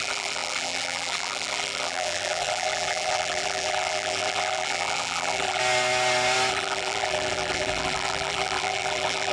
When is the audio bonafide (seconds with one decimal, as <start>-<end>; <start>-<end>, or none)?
5.6-6.5